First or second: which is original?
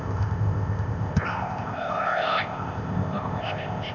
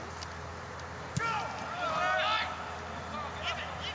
second